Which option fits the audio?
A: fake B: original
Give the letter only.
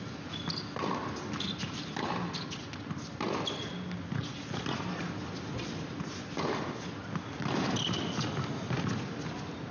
B